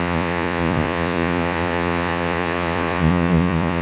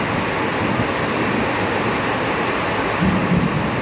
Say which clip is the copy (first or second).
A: first